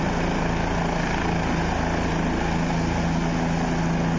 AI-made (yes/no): no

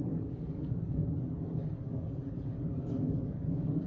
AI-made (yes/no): yes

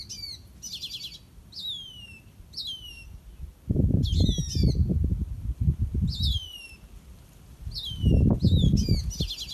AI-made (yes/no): no